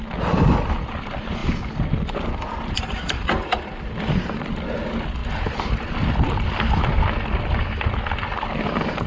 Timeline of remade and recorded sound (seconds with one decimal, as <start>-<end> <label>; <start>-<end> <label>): 0.0-1.4 recorded; 1.4-4.2 remade; 4.2-9.1 recorded